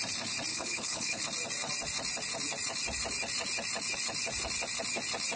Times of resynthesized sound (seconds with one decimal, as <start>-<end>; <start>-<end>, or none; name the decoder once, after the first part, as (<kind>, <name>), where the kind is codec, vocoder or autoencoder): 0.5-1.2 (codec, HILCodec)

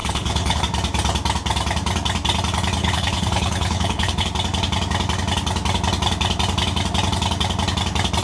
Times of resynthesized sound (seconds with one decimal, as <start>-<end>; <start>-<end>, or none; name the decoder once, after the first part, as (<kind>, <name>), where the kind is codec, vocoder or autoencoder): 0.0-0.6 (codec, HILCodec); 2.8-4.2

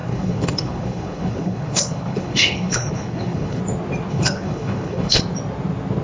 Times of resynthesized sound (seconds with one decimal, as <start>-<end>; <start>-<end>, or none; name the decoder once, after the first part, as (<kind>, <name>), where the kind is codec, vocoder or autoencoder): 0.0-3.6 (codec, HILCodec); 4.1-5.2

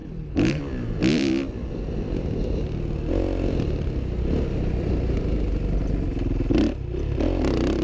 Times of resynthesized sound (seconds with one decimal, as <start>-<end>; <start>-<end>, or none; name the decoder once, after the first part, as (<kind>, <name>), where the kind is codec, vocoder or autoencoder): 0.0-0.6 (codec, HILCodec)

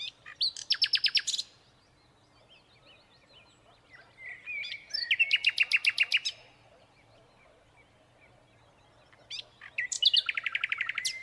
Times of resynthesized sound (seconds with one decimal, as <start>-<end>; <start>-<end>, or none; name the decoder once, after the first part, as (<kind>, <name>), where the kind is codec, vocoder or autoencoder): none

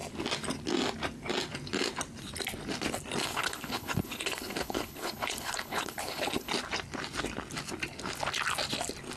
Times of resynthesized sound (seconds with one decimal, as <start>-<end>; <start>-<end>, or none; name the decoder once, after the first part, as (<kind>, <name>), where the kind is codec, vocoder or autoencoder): 3.2-6.5 (codec, HILCodec)